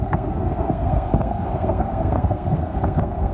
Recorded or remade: remade